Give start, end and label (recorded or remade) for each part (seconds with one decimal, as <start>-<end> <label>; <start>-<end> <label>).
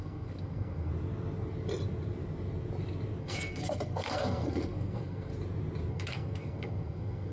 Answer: 0.0-0.9 remade; 0.9-3.2 recorded; 3.2-5.3 remade; 5.3-5.9 recorded; 5.9-7.3 remade